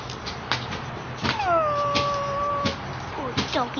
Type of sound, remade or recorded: recorded